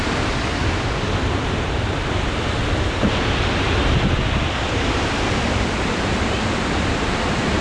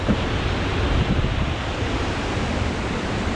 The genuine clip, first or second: first